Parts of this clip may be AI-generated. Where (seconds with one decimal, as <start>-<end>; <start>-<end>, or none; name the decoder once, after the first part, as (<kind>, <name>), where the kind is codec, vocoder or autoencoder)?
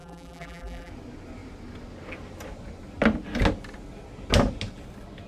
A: 0.0-0.9 (vocoder, BigVGAN v2)